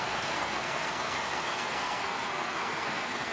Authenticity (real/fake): fake